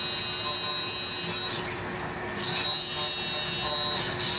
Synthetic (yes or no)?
no